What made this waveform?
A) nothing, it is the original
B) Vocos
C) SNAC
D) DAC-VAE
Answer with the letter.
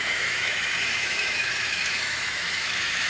D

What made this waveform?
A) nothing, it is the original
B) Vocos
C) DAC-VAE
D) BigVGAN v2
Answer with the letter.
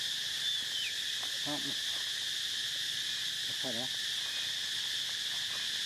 A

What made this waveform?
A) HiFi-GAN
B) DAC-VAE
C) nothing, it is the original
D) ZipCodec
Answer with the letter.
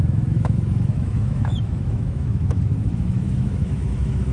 B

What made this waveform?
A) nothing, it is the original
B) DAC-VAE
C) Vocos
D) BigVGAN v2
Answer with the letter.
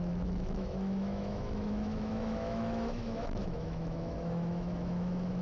B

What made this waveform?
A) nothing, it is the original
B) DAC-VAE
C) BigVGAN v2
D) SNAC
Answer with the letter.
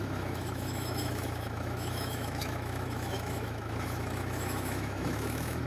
B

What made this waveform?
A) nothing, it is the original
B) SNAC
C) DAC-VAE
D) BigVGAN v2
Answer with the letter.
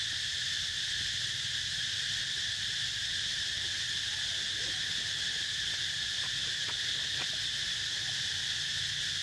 A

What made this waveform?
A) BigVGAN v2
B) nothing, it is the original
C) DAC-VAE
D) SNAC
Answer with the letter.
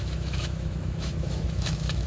C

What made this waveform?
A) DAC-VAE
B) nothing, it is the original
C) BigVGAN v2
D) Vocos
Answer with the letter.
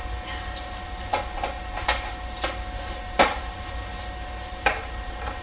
B